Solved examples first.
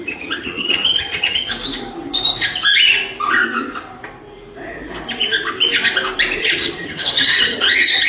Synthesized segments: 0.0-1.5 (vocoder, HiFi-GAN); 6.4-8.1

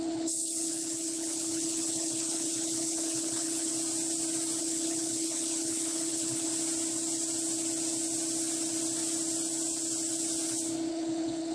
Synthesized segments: 0.0-3.7 (codec, HILCodec); 4.6-6.5; 10.9-11.5

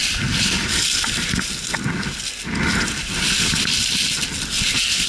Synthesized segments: none

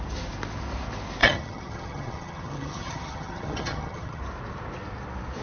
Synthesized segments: 1.2-4.2 (vocoder, HiFi-GAN)

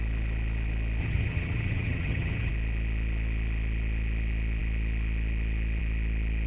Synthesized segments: 1.0-2.5 (vocoder, HiFi-GAN)